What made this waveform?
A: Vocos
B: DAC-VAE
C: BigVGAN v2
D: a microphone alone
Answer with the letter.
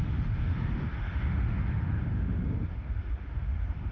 B